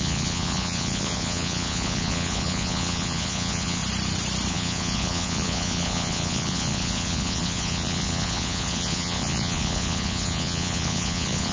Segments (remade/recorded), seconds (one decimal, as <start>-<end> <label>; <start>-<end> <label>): 0.0-3.8 remade; 3.8-4.5 recorded; 4.5-11.5 remade